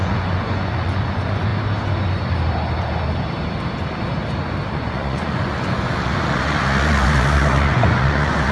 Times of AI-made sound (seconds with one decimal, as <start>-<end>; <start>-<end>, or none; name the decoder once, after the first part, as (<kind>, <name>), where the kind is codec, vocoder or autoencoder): 0.0-1.5 (vocoder, Vocos); 4.7-8.5